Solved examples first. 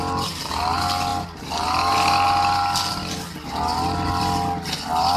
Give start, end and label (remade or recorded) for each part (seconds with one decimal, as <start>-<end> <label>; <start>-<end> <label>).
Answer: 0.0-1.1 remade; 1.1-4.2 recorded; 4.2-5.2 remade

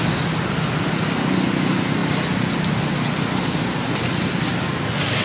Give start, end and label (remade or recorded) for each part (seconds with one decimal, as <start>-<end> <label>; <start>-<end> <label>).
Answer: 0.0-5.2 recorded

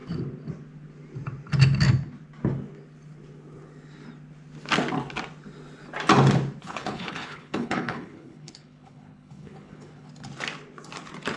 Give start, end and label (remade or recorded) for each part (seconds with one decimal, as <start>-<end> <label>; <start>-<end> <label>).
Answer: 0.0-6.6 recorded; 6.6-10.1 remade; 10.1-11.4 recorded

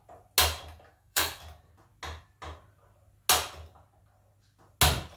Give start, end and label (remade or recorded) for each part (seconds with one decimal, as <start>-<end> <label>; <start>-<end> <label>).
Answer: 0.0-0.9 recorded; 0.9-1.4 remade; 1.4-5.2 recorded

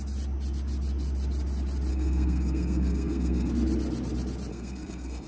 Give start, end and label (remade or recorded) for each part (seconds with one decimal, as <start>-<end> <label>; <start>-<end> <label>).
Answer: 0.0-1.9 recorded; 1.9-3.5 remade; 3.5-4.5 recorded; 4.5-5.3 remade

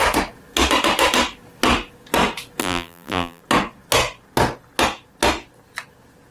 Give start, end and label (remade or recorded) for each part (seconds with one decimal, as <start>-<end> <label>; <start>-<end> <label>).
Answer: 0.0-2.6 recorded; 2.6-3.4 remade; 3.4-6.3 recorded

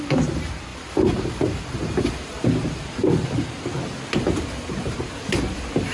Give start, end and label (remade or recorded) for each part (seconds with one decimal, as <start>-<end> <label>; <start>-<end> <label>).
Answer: 0.0-5.9 recorded

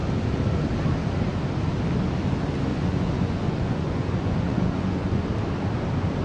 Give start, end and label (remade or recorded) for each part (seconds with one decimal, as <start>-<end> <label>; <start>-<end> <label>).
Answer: 0.0-2.7 recorded; 2.7-5.2 remade; 5.2-6.2 recorded